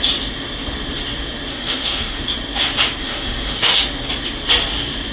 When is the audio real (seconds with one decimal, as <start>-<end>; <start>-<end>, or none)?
0.0-1.5; 2.2-3.0; 3.8-5.1